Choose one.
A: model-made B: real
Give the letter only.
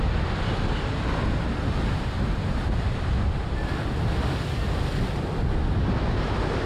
B